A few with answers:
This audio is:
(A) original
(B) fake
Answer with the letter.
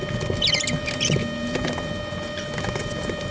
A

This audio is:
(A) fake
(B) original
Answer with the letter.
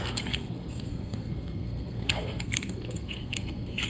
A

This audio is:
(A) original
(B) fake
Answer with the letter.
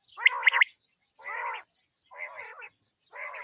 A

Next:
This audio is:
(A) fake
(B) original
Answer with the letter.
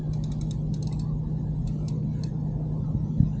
B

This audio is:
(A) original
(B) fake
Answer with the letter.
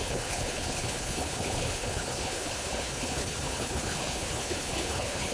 B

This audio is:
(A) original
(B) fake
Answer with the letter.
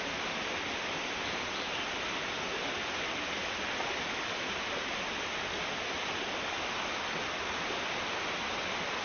A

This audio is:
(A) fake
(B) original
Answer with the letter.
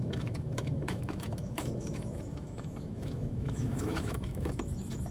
A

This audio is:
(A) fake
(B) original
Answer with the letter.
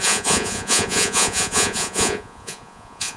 A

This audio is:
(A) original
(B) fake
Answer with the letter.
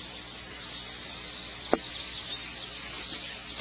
A